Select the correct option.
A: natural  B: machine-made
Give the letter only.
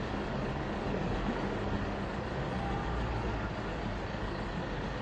B